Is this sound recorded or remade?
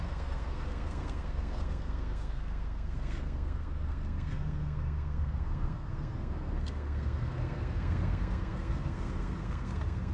remade